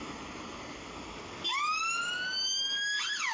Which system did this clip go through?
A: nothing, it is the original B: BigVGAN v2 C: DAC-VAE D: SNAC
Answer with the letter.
A